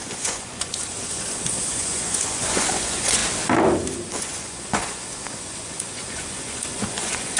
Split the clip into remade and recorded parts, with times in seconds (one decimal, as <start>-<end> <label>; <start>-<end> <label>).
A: 0.0-3.2 remade; 3.2-4.1 recorded; 4.1-7.4 remade